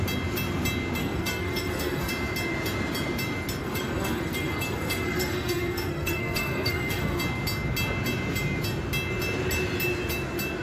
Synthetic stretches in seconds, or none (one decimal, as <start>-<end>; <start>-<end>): 1.0-2.1; 3.6-7.2